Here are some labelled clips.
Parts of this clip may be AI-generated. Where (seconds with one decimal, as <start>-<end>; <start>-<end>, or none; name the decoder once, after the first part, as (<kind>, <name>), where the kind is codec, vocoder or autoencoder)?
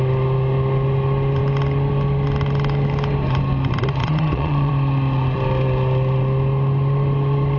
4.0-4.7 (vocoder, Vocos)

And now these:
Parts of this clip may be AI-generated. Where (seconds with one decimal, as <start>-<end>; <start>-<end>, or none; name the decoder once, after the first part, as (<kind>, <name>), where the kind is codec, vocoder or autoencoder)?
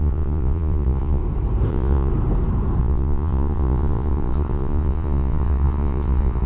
0.0-1.2 (vocoder, Vocos); 1.7-2.1; 2.8-6.5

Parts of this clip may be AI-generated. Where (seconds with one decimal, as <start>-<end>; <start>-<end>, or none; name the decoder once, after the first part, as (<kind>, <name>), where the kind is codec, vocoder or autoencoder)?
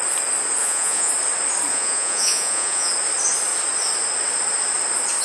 0.6-1.1 (vocoder, Vocos); 1.7-2.9